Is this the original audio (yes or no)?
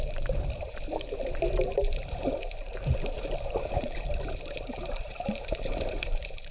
no